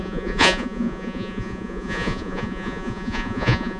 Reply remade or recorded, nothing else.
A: remade